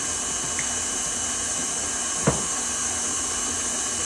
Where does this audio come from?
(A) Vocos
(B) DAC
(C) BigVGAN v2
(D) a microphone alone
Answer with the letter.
D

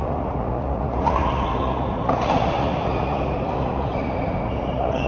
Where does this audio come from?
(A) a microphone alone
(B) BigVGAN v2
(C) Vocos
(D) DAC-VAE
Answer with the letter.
C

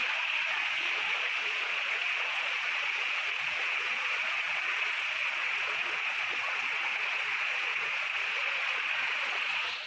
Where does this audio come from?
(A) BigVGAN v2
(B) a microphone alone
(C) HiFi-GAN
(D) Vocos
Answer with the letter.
D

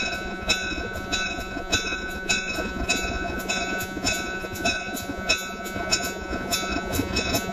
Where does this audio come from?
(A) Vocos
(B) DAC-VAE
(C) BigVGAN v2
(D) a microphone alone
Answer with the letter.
A